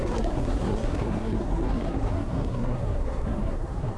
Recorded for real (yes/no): no